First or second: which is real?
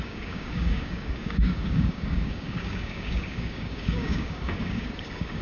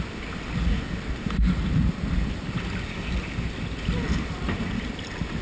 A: second